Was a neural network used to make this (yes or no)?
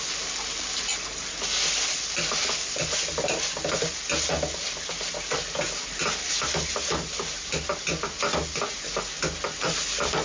no